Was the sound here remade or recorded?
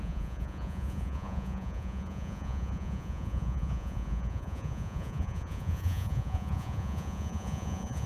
remade